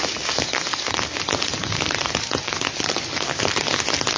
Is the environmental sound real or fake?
real